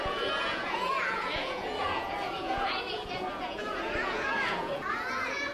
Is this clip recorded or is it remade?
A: remade